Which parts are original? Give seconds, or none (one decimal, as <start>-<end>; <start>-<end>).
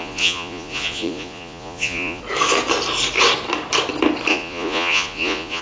2.2-4.3